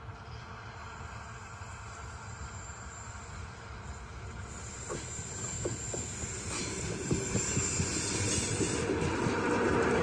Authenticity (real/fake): real